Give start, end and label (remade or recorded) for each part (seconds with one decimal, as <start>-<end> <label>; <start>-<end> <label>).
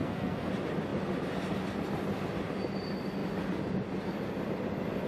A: 0.0-0.5 remade; 0.5-5.1 recorded